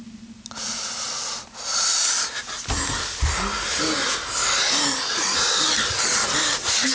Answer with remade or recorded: recorded